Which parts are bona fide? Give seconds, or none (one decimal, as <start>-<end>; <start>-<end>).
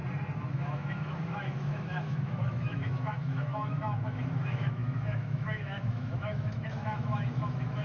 0.0-0.5